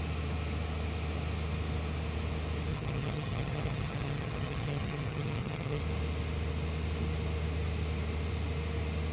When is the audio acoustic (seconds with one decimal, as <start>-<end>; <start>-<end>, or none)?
0.0-2.7; 5.8-9.1